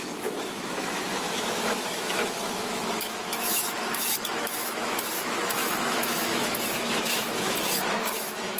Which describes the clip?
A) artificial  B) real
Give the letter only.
A